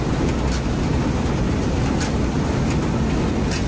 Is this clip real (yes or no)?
yes